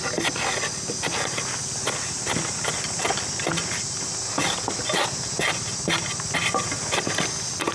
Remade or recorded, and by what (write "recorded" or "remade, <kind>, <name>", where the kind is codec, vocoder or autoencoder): recorded